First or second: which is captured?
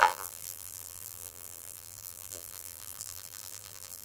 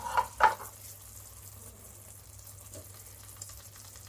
second